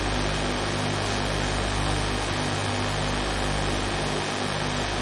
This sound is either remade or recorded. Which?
recorded